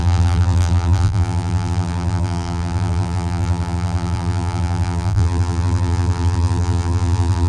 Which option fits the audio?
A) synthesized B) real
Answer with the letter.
A